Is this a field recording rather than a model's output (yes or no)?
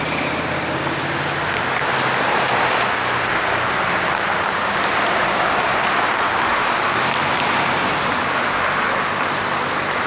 yes